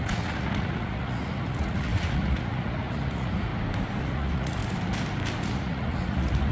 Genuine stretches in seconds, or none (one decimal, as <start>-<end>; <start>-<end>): 3.5-4.0; 4.6-5.4